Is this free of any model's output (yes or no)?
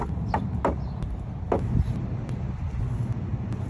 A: yes